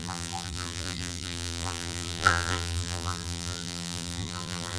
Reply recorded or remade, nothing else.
remade